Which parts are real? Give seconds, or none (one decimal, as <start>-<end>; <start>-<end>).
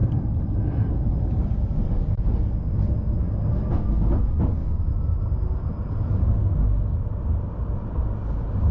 2.2-4.6; 6.3-8.7